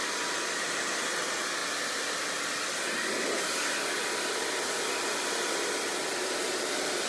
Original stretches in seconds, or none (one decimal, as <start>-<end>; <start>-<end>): 0.0-7.1